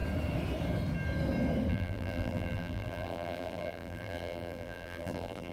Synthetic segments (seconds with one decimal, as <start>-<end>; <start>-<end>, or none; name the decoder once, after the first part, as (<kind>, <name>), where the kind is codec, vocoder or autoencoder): 1.7-5.5 (vocoder, BigVGAN v2)